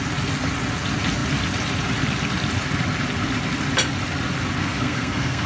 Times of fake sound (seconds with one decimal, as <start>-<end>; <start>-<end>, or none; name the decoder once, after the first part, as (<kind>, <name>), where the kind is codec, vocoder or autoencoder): 4.6-5.5 (codec, SNAC)

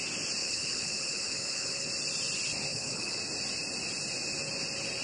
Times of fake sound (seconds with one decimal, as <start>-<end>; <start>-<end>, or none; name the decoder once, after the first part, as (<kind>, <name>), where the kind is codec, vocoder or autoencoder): 0.4-1.9 (codec, HILCodec); 2.7-3.2

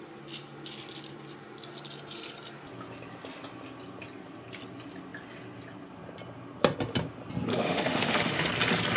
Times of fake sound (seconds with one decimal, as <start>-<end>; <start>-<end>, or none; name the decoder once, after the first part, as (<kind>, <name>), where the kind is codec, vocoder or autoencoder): 7.5-8.5 (autoencoder, DAC-VAE)

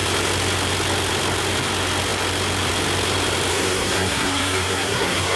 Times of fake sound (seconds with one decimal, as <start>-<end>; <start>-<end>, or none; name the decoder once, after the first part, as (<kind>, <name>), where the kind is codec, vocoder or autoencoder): 3.5-5.4 (codec, SNAC)

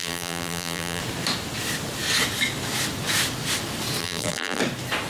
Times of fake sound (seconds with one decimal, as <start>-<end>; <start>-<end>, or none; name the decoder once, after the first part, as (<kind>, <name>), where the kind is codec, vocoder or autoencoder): 0.0-1.0 (vocoder, BigVGAN v2); 4.0-4.6

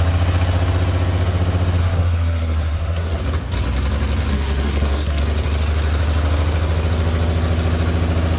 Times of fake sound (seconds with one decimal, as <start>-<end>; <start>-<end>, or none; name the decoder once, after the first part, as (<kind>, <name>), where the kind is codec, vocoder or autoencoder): 1.8-3.2 (codec, SNAC); 4.3-5.2

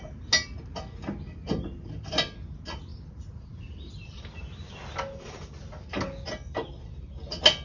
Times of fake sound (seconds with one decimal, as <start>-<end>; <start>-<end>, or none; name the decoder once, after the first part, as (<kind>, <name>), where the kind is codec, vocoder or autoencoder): 1.0-1.7 (vocoder, BigVGAN v2); 2.9-4.2

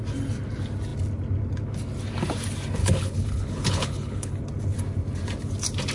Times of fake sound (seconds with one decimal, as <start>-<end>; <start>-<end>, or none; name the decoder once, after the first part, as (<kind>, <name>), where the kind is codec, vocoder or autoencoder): 2.8-4.3 (codec, HILCodec)